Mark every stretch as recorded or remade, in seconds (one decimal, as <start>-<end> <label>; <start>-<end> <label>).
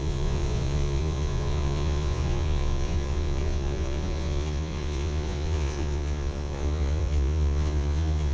0.0-8.3 remade